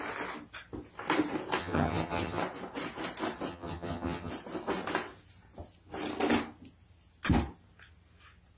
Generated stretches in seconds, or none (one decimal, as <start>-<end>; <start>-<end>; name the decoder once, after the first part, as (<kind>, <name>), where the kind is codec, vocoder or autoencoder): 1.6-2.4 (vocoder, HiFi-GAN); 3.5-4.3